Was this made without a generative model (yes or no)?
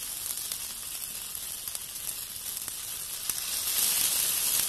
yes